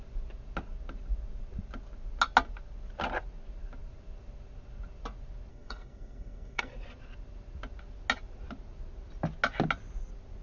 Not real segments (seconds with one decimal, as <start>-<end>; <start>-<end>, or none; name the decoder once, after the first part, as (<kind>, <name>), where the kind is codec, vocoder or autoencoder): 5.5-6.7 (codec, SNAC)